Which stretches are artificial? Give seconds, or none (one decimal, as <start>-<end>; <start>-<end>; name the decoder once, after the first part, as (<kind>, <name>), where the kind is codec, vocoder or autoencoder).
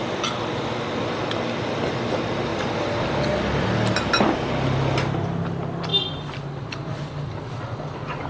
none